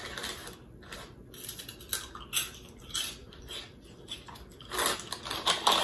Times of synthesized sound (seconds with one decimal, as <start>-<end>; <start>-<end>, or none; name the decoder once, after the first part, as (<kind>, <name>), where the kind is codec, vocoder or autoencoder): none